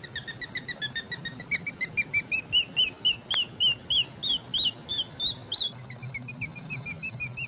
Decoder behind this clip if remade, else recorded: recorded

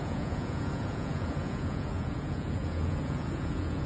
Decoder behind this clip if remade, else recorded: remade, vocoder, Vocos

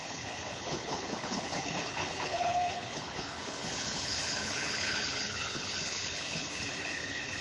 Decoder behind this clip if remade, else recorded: remade, codec, HILCodec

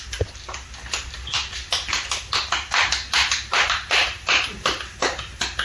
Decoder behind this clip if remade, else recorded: recorded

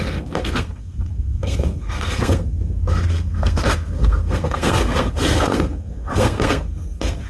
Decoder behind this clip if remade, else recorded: remade, codec, SNAC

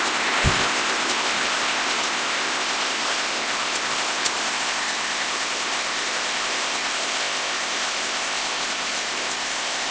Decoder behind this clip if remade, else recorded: remade, codec, ZipCodec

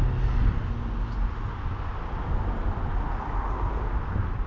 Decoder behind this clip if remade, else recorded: recorded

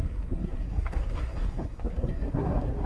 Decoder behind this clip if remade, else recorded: remade, codec, SNAC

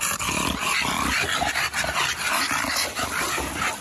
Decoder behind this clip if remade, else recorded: recorded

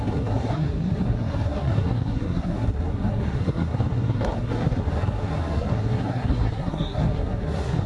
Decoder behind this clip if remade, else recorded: remade, codec, SNAC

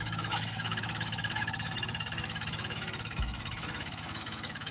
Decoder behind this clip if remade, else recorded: remade, autoencoder, DAC-VAE